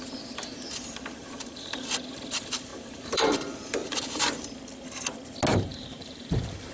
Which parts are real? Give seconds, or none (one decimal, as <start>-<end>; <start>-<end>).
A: 0.0-1.2; 1.9-2.7; 4.5-5.5